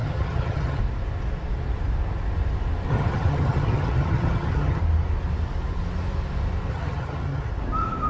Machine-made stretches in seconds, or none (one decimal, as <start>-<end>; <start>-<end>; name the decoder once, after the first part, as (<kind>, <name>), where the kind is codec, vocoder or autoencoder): 0.0-0.8 (vocoder, HiFi-GAN); 2.9-4.8; 6.7-7.5